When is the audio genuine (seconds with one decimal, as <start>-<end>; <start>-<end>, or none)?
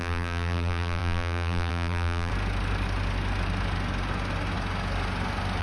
2.3-5.6